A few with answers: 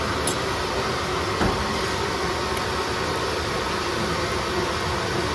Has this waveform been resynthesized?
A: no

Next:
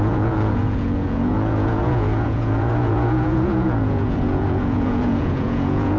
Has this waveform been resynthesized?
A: yes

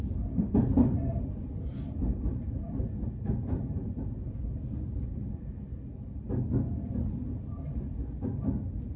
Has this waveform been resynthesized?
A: no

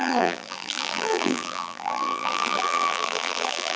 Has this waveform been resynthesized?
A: yes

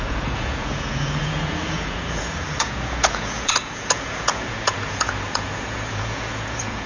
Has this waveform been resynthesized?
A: yes